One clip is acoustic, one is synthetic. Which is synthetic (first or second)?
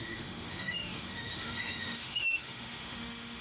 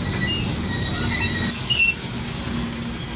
first